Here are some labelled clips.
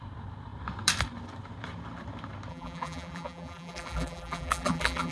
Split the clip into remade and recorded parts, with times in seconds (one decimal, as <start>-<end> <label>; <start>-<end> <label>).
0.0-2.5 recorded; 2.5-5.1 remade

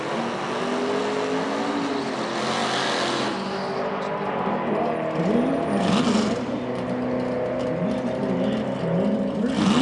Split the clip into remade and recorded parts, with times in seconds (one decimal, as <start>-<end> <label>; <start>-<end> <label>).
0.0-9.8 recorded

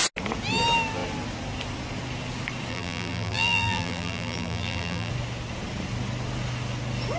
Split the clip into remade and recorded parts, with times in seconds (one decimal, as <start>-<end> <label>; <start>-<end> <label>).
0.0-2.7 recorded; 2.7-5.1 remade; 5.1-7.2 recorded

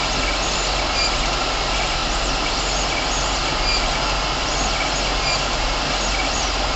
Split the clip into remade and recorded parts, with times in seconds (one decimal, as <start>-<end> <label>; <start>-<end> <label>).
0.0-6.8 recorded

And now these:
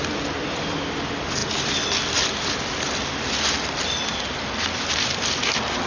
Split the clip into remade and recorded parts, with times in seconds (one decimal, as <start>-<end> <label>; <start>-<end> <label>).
0.0-5.9 recorded

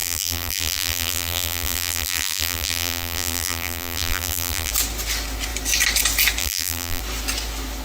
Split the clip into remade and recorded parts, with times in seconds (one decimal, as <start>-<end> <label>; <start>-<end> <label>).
0.0-4.7 remade; 4.7-6.4 recorded; 6.4-7.0 remade; 7.0-7.8 recorded